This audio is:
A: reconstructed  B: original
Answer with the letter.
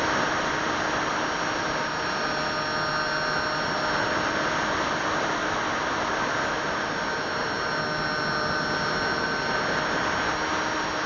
B